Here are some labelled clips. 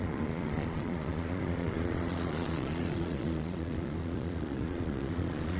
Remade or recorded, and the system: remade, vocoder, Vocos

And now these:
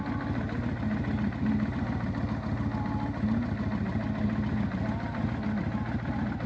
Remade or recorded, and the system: recorded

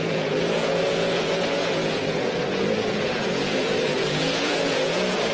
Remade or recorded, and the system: remade, vocoder, Vocos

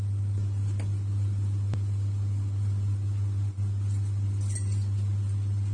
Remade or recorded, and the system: recorded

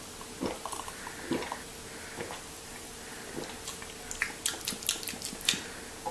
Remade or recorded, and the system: recorded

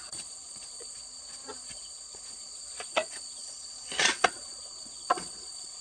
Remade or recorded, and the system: remade, vocoder, Vocos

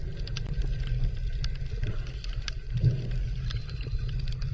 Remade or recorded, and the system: recorded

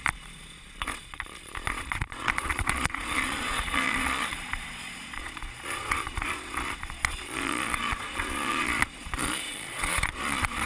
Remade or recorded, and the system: remade, vocoder, Vocos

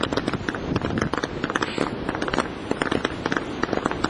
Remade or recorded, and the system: recorded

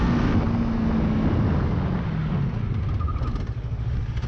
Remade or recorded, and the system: recorded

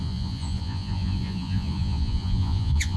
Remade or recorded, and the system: remade, vocoder, Vocos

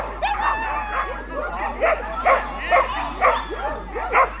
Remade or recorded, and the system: recorded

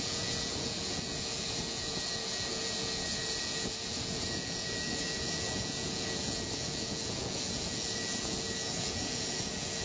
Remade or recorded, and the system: remade, vocoder, Vocos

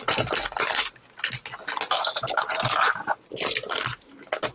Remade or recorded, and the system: recorded